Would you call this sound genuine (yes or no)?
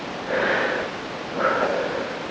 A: yes